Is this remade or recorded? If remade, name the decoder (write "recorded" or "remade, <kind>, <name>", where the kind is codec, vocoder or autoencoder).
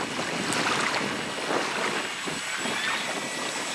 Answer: recorded